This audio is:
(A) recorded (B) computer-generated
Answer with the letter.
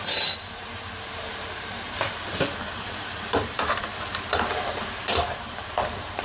B